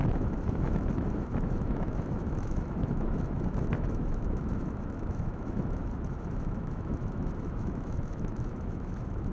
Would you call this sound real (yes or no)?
no